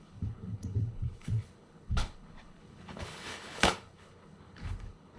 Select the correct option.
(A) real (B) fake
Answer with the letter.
B